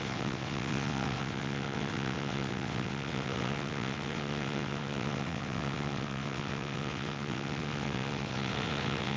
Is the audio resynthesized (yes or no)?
yes